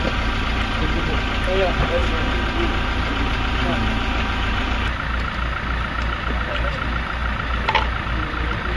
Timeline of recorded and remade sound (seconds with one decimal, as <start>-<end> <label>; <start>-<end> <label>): 0.0-8.8 recorded